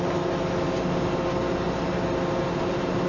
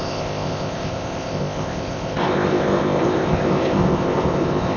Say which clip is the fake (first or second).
second